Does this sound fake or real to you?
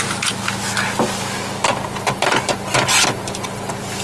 real